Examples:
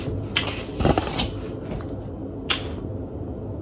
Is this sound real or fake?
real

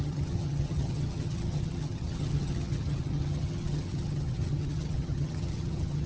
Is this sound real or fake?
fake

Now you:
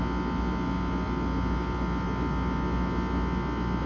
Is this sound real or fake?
real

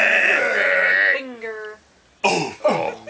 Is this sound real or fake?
real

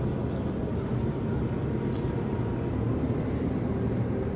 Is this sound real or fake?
real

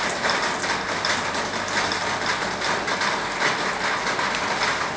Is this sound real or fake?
real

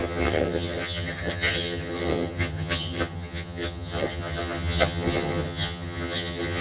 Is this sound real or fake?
fake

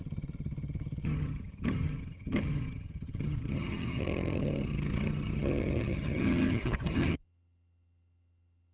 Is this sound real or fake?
fake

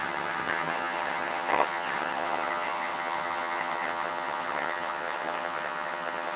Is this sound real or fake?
fake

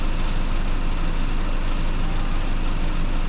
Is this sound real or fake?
real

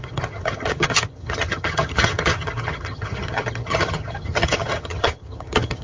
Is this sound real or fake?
fake